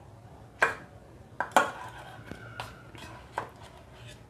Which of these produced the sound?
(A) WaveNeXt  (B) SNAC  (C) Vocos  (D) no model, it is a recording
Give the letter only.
D